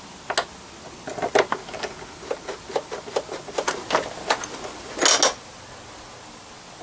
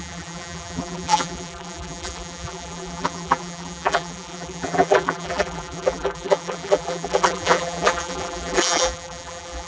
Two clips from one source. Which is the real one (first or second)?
first